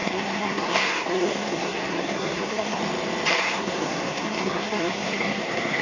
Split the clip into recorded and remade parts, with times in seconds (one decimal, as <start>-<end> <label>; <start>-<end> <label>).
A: 0.0-2.8 remade; 2.8-3.3 recorded; 3.3-5.8 remade